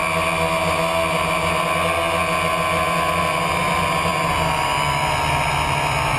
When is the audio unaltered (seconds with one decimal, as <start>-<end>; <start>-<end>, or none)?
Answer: 0.0-6.2